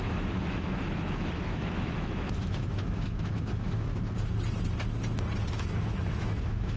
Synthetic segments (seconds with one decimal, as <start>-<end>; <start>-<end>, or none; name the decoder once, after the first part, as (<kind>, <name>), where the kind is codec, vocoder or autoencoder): 0.0-3.9 (autoencoder, DAC-VAE); 5.5-6.8